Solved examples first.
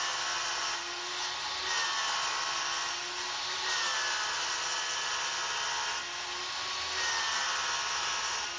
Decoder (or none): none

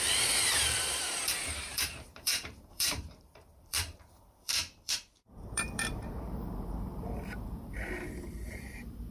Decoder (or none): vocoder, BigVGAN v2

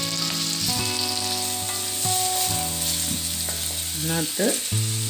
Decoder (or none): none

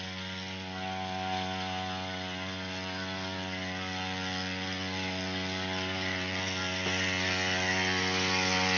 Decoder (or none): none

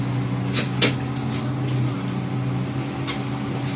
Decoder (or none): none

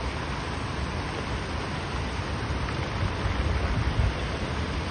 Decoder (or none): none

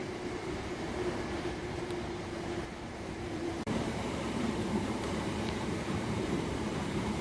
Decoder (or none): vocoder, BigVGAN v2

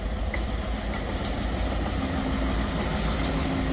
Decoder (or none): none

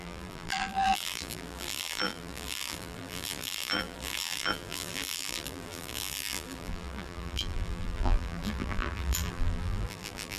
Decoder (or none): vocoder, BigVGAN v2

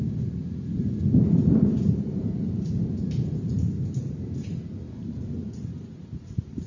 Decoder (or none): vocoder, BigVGAN v2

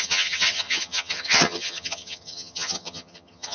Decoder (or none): vocoder, HiFi-GAN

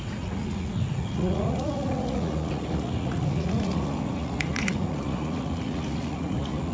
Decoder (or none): vocoder, Vocos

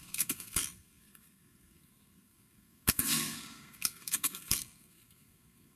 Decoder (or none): codec, SNAC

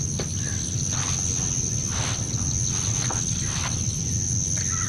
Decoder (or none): none